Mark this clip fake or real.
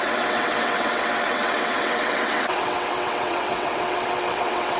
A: fake